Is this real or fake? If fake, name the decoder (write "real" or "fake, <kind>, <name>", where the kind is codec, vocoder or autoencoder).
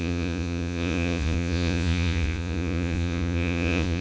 fake, vocoder, Vocos